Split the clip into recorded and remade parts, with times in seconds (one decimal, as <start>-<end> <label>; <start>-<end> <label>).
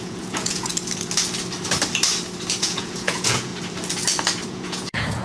0.0-0.7 remade; 0.7-2.6 recorded; 2.6-3.5 remade; 3.5-4.5 recorded; 4.5-5.2 remade